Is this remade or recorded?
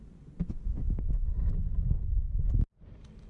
recorded